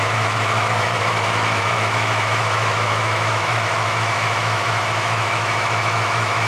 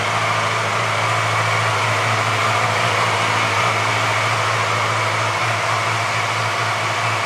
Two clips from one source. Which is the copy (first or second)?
first